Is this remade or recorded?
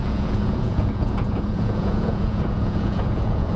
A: remade